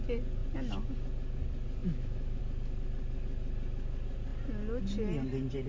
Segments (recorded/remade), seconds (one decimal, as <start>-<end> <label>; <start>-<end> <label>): 0.0-1.8 recorded; 1.8-2.4 remade; 2.4-5.7 recorded